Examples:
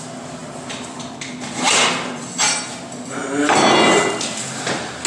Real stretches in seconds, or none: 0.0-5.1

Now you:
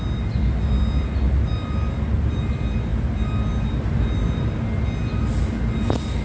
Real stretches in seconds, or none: 0.0-6.2

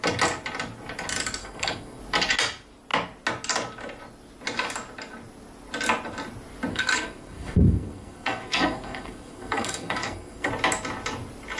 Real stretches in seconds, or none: 0.0-1.4; 2.0-6.7; 10.5-11.6

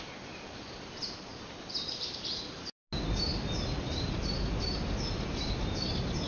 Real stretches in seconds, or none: 0.0-6.3

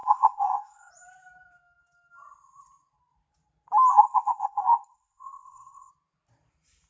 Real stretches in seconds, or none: 0.9-3.9; 5.9-6.9

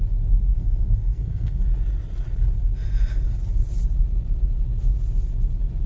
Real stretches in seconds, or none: 0.0-0.5; 1.6-5.9

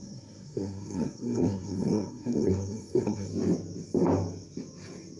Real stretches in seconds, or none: 3.3-5.2

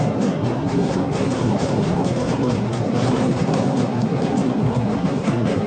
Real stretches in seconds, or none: none